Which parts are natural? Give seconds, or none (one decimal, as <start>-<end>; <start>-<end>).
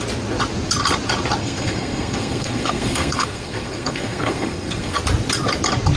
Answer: 0.0-1.4; 5.0-6.0